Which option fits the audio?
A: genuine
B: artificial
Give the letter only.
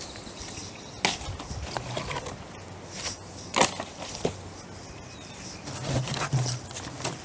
A